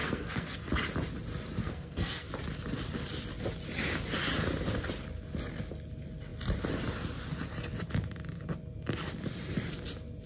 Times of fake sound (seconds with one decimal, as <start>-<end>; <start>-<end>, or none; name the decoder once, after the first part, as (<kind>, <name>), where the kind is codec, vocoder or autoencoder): 0.0-0.7 (codec, SNAC); 1.6-2.3